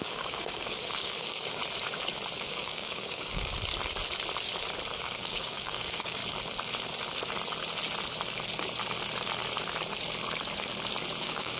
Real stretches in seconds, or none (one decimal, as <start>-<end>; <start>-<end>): 1.6-2.4; 3.5-5.0; 6.2-11.2